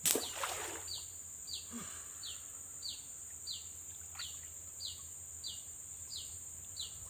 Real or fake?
real